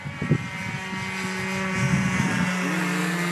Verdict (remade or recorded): recorded